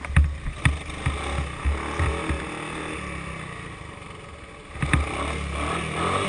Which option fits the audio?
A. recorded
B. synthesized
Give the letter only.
A